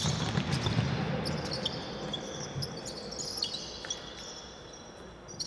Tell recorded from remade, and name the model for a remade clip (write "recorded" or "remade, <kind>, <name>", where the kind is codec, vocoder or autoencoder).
recorded